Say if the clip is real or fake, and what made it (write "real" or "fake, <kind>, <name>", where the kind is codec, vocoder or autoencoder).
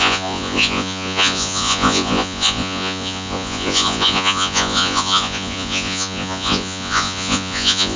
fake, vocoder, Vocos